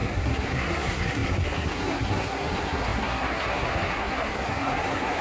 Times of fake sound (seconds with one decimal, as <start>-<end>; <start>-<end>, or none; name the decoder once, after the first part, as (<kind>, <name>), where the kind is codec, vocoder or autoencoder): 0.0-5.2 (codec, SNAC)